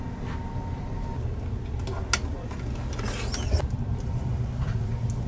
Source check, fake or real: real